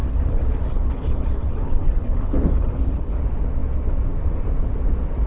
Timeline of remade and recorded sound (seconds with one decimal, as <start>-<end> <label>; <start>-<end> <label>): 0.0-3.2 remade; 3.2-5.3 recorded